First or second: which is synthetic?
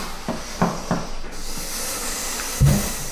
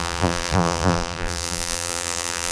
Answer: second